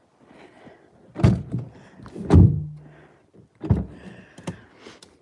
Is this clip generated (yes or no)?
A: no